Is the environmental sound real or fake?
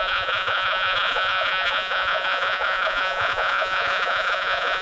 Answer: fake